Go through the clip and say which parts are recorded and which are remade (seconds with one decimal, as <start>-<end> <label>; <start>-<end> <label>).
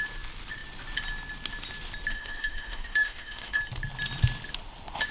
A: 0.0-2.1 recorded; 2.1-3.6 remade; 3.6-5.1 recorded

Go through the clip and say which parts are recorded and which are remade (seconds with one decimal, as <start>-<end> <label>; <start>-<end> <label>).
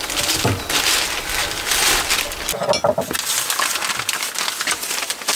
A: 0.0-5.4 recorded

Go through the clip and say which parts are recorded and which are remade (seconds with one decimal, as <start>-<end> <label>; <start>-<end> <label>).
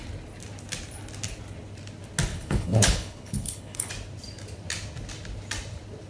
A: 0.0-2.3 recorded; 2.3-3.9 remade; 3.9-6.1 recorded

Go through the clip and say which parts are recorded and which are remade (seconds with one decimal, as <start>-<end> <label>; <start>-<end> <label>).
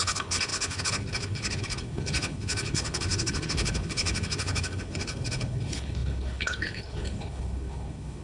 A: 0.0-8.2 remade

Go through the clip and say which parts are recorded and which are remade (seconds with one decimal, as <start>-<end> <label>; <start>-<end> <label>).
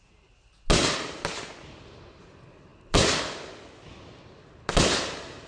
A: 0.0-5.5 recorded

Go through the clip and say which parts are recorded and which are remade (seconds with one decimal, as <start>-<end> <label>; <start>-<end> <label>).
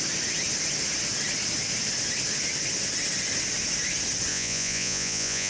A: 0.0-4.3 recorded; 4.3-5.5 remade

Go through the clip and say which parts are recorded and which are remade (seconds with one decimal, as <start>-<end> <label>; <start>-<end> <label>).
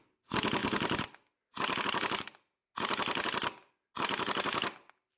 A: 0.0-5.2 recorded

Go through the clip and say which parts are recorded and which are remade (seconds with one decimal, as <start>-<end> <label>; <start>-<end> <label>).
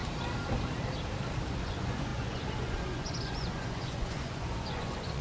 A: 0.0-1.5 recorded; 1.5-5.2 remade